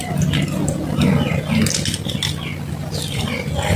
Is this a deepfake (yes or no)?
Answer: no